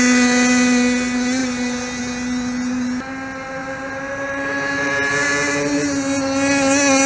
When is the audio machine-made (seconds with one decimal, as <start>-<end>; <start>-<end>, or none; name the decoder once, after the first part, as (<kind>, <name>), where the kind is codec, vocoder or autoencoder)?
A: 1.4-2.0 (vocoder, BigVGAN v2); 3.6-4.9